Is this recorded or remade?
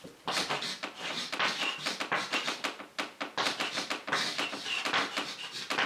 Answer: recorded